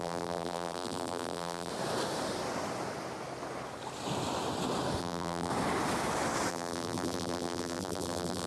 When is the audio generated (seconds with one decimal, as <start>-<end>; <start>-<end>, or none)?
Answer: 0.0-1.7; 5.0-5.5; 6.5-8.5